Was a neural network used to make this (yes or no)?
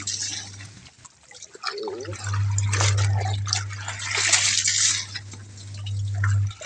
no